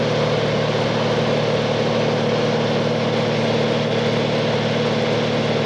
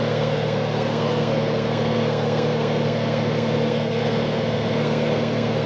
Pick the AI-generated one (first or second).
second